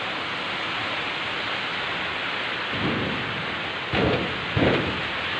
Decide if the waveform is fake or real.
real